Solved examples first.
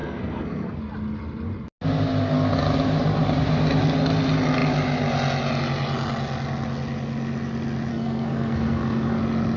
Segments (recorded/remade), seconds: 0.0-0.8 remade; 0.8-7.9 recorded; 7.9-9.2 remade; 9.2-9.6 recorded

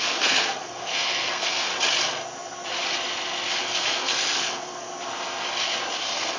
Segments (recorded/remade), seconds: 0.0-1.7 remade; 1.7-3.6 recorded; 3.6-4.9 remade; 4.9-6.0 recorded; 6.0-6.4 remade